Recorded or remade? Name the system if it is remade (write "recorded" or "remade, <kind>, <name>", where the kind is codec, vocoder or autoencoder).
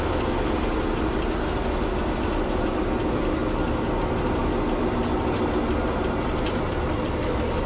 recorded